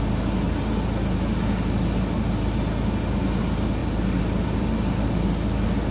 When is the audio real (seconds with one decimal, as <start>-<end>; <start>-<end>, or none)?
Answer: 0.0-3.8; 5.3-5.9